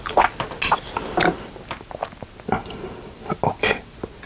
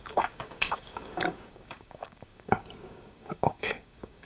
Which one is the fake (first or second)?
second